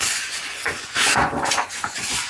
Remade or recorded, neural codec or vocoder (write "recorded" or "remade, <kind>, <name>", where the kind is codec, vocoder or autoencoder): remade, vocoder, Vocos